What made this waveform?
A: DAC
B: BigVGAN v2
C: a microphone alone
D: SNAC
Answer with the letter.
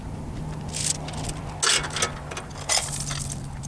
C